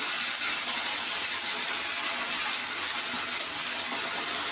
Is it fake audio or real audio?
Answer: real